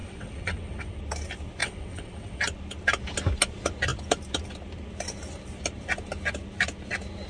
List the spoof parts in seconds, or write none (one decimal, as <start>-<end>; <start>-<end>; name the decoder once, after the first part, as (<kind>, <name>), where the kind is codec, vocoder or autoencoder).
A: 0.0-1.0 (vocoder, WaveNeXt); 1.6-2.4